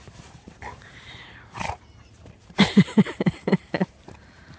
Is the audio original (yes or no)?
no